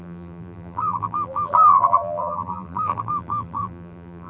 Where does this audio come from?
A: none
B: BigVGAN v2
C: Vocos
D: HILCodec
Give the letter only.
B